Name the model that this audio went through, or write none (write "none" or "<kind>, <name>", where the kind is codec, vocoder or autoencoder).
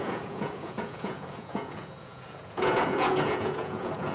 vocoder, Vocos